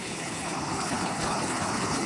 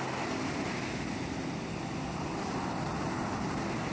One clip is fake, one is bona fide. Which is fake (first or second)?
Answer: first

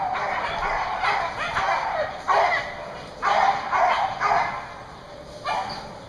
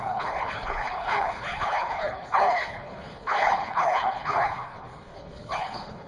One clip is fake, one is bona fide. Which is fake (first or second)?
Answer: second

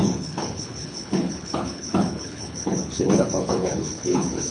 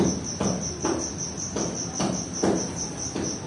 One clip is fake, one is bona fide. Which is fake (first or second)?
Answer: first